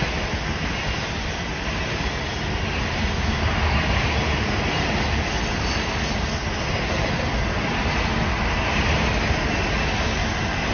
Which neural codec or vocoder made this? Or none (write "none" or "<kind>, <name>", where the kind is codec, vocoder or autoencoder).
none